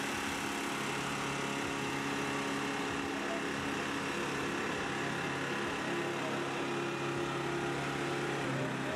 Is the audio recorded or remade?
recorded